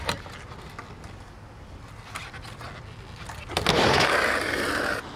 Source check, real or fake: real